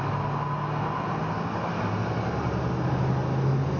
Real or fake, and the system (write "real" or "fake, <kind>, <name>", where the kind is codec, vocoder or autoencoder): real